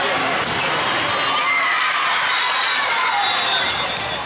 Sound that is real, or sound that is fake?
real